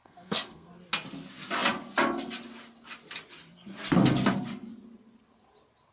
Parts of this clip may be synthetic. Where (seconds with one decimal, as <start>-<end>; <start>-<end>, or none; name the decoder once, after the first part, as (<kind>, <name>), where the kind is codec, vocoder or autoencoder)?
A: 0.0-0.7 (codec, SNAC)